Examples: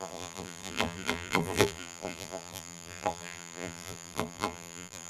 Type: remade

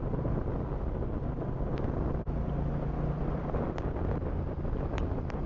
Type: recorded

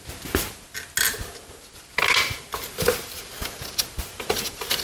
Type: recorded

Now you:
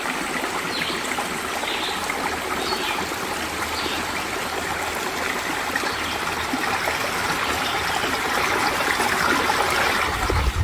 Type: recorded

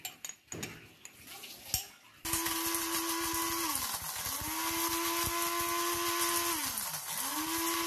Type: recorded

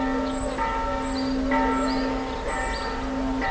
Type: recorded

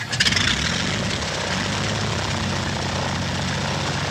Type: recorded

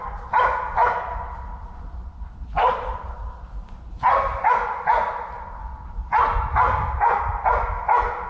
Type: recorded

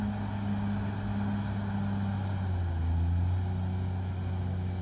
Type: recorded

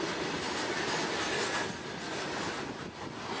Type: recorded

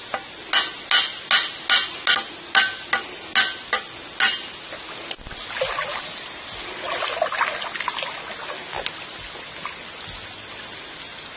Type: recorded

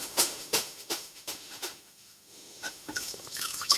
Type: remade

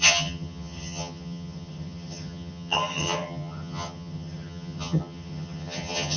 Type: remade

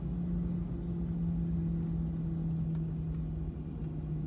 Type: recorded